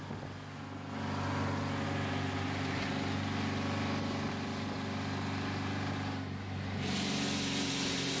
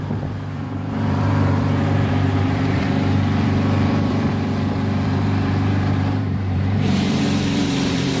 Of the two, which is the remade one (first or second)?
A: second